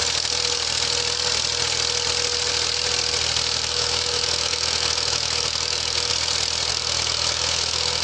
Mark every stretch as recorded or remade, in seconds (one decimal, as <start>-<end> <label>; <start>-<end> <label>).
0.0-3.6 recorded; 3.6-6.1 remade; 6.1-6.7 recorded; 6.7-8.0 remade